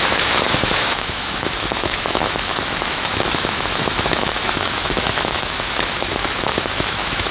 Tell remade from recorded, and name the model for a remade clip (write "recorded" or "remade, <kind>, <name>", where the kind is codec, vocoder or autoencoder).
remade, autoencoder, DAC-VAE